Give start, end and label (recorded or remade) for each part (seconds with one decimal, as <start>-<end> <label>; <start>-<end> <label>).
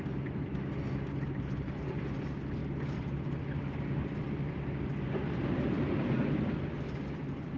0.0-2.6 recorded; 2.6-7.6 remade